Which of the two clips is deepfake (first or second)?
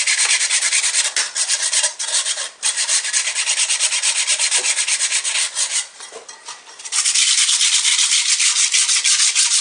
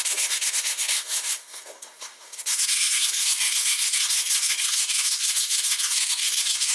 second